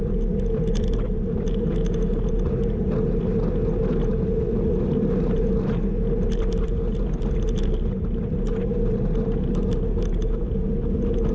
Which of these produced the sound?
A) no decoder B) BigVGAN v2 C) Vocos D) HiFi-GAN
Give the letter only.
A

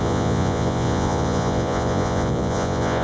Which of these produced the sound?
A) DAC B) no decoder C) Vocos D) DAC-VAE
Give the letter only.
C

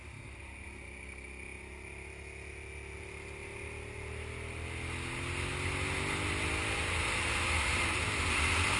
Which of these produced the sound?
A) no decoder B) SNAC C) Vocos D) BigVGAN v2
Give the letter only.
A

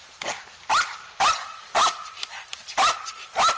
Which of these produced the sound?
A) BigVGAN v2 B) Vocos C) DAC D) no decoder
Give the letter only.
D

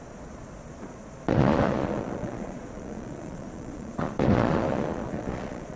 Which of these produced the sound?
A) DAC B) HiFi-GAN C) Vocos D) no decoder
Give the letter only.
C